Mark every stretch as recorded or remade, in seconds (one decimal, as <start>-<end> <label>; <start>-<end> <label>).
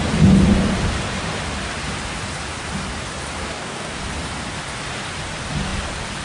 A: 0.0-3.4 recorded; 3.4-4.0 remade; 4.0-6.2 recorded